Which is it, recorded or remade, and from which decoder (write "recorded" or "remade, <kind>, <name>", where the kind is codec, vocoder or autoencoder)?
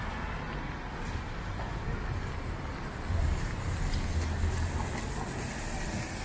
recorded